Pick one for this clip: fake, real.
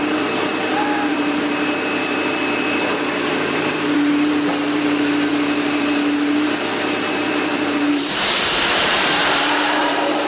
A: fake